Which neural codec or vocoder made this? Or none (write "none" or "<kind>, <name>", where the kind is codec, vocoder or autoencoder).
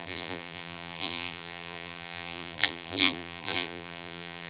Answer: vocoder, BigVGAN v2